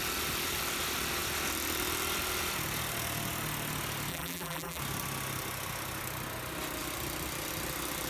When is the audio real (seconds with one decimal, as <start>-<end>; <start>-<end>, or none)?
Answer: 0.0-4.1; 4.8-8.1